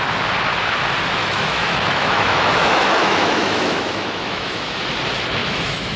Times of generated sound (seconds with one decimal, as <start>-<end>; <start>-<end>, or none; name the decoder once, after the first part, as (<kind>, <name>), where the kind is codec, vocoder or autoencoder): 1.2-4.8 (autoencoder, DAC-VAE); 5.4-6.0